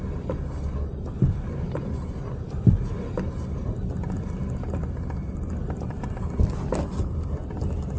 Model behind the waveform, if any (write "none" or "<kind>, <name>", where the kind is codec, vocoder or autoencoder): none